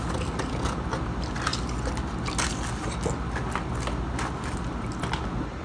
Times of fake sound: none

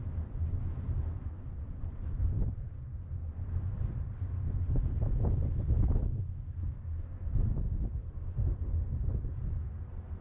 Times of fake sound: 8.0-8.9 (autoencoder, DAC-VAE)

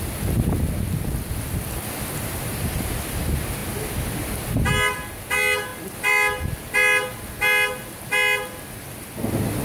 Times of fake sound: none

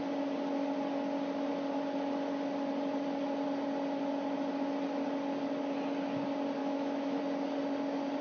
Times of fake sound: 6.6-7.2 (autoencoder, DAC-VAE)

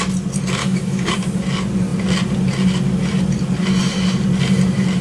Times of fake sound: 0.6-1.1 (autoencoder, DAC-VAE)